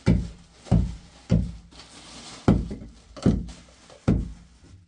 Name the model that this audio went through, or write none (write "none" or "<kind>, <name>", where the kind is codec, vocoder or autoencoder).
none